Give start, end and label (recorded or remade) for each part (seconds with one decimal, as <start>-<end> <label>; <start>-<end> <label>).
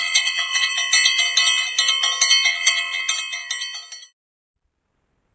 0.0-0.7 remade; 0.7-2.5 recorded; 2.5-3.0 remade; 3.0-5.3 recorded